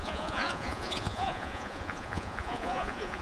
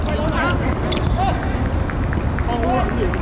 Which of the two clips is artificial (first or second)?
first